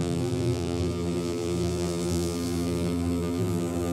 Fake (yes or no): yes